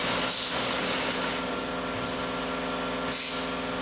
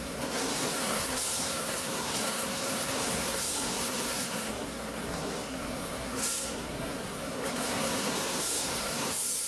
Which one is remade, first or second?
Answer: second